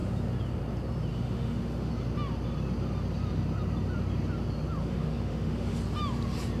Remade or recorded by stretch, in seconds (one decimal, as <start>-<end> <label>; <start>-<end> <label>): 0.0-1.1 recorded; 1.1-1.9 remade; 1.9-4.8 recorded; 4.8-5.8 remade; 5.8-6.6 recorded